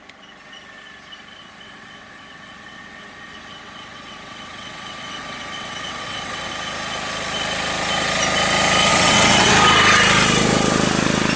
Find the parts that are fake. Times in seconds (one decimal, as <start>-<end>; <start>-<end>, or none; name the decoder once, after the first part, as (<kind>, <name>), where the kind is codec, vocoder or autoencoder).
1.4-6.5 (vocoder, WaveNeXt); 8.9-9.5